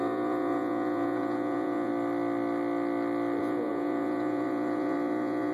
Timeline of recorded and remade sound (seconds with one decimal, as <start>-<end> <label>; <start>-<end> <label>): 0.0-1.9 remade; 1.9-3.4 recorded; 3.4-5.5 remade